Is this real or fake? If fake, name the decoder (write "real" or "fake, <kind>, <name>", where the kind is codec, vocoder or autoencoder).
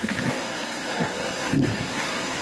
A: fake, codec, SNAC